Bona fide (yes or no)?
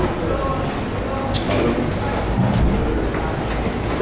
yes